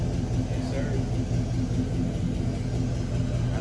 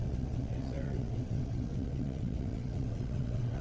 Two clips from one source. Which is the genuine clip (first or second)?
first